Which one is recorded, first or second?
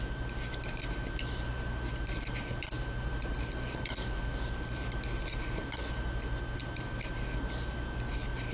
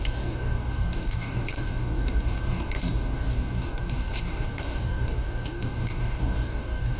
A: first